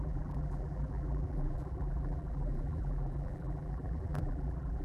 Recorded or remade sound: remade